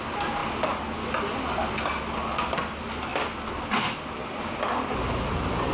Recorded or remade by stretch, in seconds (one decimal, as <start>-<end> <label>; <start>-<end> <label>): 0.0-5.7 recorded